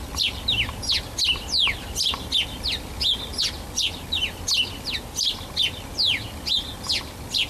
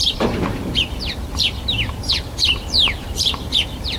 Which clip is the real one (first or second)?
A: first